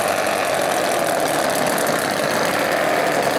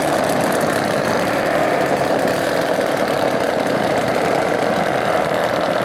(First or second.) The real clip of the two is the first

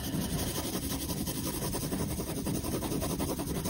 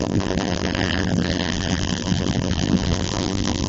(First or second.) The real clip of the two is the first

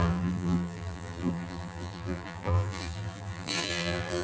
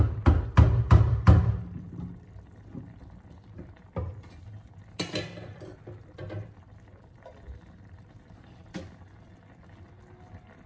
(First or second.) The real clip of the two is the second